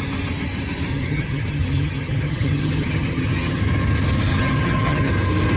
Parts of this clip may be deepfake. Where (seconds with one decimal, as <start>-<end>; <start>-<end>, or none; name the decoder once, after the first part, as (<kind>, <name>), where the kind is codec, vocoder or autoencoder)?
0.9-3.6 (vocoder, HiFi-GAN); 4.3-5.1